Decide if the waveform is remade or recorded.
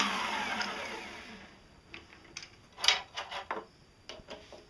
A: recorded